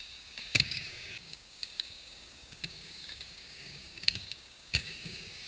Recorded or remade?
remade